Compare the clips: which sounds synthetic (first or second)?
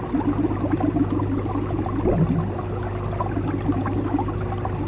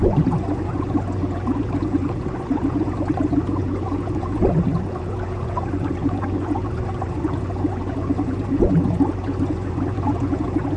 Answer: second